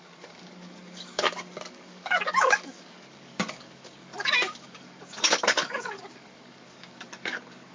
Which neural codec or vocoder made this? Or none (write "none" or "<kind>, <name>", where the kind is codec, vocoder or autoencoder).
codec, DAC